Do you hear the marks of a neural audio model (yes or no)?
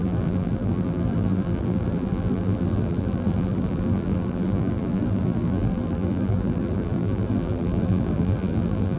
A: yes